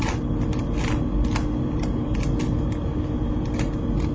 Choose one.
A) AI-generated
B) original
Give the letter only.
B